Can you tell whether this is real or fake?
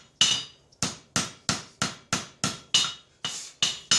real